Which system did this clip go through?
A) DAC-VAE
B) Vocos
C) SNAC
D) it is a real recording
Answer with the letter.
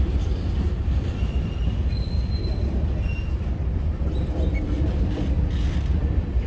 D